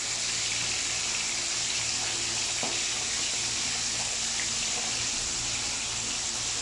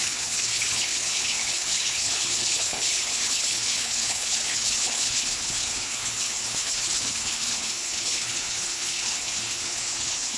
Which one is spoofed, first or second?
second